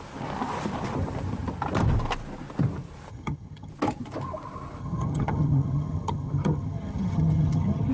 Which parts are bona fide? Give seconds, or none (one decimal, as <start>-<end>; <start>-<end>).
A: 0.0-3.1; 3.7-4.8